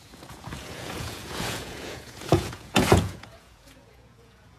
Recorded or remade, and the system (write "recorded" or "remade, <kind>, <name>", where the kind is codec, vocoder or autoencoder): remade, vocoder, Vocos